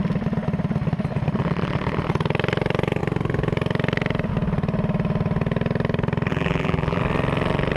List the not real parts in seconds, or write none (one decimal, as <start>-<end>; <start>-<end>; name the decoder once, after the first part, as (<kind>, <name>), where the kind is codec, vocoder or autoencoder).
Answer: 6.3-7.0 (vocoder, BigVGAN v2)